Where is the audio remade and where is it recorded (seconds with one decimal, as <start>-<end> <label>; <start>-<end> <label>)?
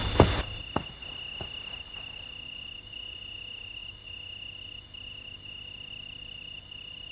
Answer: 0.0-7.1 recorded